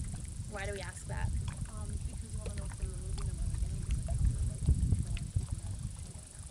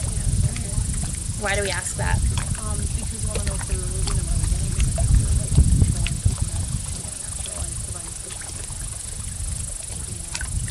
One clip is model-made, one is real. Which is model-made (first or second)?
first